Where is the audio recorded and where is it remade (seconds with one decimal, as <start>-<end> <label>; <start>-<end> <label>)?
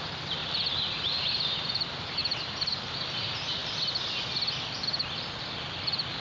0.0-0.4 remade; 0.4-0.9 recorded; 0.9-3.6 remade; 3.6-6.2 recorded